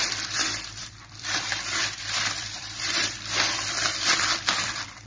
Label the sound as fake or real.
fake